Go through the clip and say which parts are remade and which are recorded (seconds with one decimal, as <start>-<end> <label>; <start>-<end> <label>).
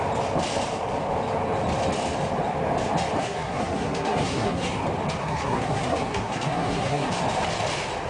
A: 0.0-3.2 recorded; 3.2-4.8 remade; 4.8-5.2 recorded; 5.2-7.1 remade; 7.1-8.1 recorded